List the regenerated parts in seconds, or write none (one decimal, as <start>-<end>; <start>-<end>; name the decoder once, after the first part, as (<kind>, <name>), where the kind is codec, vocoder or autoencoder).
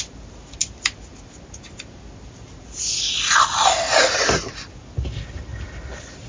none